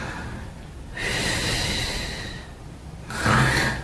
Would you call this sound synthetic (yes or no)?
no